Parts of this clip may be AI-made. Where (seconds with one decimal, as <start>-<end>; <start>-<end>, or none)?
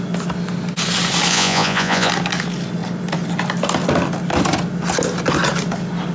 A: 1.3-2.1